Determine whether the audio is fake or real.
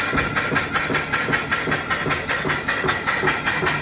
real